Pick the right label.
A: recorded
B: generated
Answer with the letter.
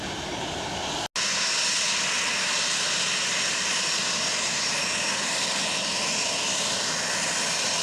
A